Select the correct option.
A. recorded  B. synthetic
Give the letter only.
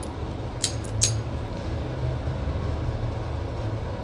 A